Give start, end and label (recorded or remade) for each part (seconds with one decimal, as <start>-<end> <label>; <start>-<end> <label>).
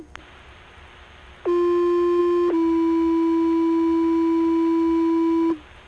0.0-5.9 recorded